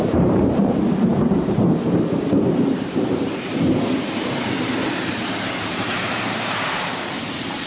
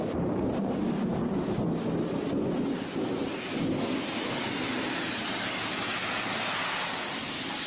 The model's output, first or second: first